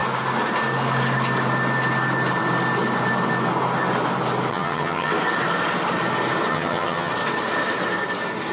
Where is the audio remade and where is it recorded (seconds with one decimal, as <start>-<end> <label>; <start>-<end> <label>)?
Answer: 0.0-4.5 recorded; 4.5-5.1 remade; 5.1-6.5 recorded; 6.5-7.1 remade; 7.1-8.5 recorded